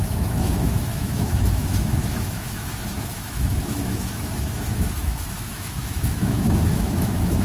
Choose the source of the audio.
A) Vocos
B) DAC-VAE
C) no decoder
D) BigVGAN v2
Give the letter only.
B